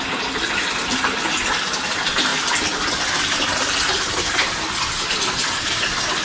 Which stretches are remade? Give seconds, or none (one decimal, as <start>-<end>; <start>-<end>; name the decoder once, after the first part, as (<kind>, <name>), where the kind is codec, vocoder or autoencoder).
0.0-2.3 (vocoder, BigVGAN v2); 3.2-6.2

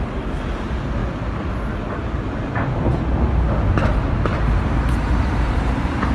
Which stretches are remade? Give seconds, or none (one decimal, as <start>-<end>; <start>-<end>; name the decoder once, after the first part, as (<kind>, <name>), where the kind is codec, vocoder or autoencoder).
4.3-6.1 (vocoder, BigVGAN v2)

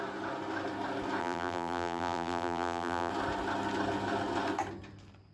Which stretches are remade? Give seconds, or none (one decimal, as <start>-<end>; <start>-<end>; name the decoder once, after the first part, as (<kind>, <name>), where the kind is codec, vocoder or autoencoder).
1.2-3.1 (vocoder, BigVGAN v2)

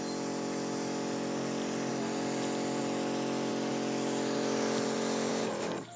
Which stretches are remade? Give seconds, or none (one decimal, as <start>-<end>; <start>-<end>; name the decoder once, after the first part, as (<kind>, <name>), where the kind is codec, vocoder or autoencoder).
none

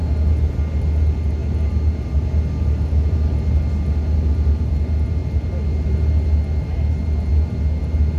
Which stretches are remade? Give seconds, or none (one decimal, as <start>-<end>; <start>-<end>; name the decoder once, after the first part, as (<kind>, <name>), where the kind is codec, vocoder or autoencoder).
none

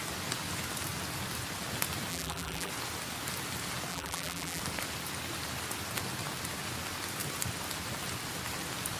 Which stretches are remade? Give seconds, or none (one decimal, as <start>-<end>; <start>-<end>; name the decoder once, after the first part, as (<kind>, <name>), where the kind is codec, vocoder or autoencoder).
2.1-2.7 (vocoder, BigVGAN v2); 3.9-4.6

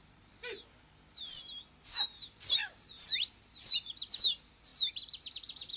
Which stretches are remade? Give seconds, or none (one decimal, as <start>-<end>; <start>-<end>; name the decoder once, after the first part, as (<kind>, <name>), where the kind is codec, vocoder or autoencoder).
none

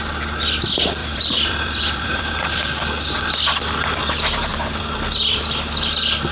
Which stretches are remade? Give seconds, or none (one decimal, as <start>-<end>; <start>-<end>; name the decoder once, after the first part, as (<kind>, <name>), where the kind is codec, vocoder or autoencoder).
1.0-2.3 (vocoder, BigVGAN v2); 4.5-5.4